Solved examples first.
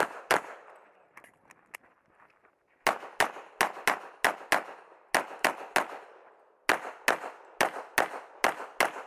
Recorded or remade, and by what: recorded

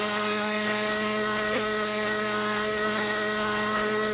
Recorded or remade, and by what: remade, codec, SNAC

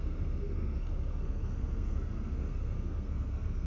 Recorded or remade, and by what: remade, codec, SNAC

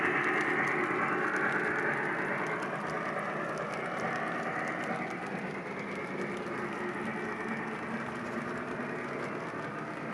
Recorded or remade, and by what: recorded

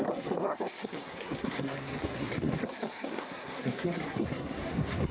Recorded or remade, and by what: remade, codec, SNAC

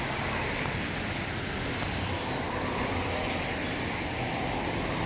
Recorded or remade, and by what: recorded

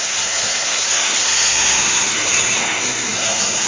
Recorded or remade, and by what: remade, codec, SNAC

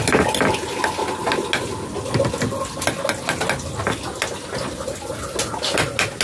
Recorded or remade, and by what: recorded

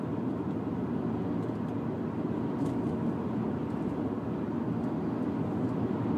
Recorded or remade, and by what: recorded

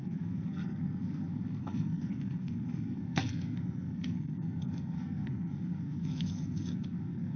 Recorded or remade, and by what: remade, codec, SNAC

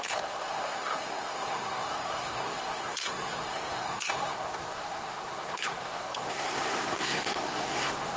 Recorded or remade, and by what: remade, codec, SNAC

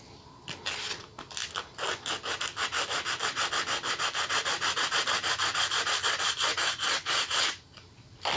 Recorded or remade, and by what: recorded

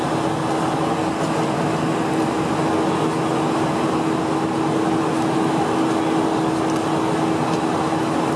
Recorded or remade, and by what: recorded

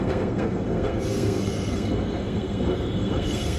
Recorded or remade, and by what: remade, codec, SNAC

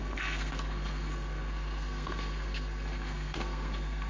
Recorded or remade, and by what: remade, codec, SNAC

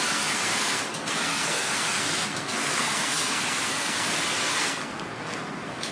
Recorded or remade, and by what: remade, codec, SNAC